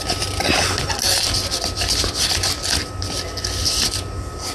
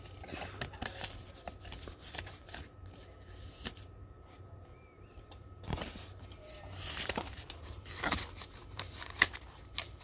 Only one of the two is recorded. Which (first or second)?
first